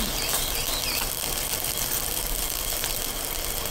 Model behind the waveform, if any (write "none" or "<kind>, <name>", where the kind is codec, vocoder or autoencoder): none